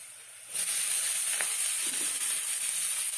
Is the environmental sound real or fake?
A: real